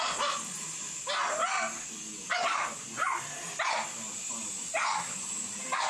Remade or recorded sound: recorded